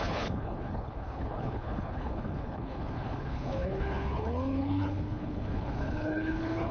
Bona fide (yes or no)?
no